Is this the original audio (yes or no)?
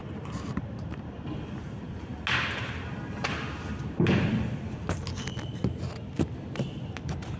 yes